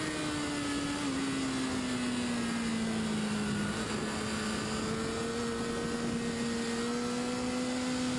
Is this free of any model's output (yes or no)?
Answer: yes